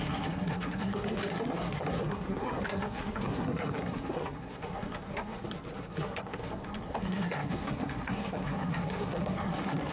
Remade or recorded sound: remade